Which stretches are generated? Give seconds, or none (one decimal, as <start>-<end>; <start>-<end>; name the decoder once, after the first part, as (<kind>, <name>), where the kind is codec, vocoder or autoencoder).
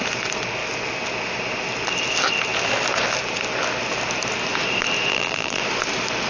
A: 5.1-5.6 (vocoder, BigVGAN v2)